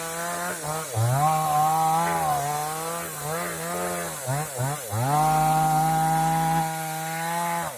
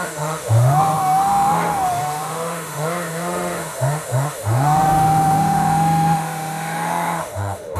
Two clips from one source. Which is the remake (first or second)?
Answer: second